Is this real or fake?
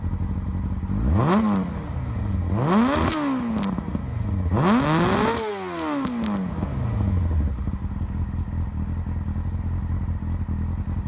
real